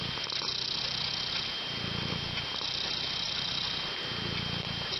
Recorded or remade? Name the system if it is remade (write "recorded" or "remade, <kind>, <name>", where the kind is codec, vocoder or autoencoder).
recorded